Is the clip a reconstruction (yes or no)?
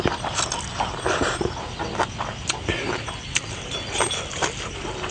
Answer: no